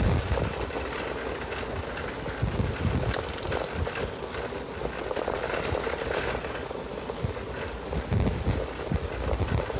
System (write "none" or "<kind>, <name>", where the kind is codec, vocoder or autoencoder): none